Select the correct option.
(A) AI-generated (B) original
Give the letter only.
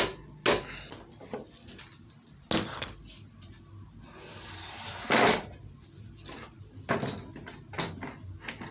B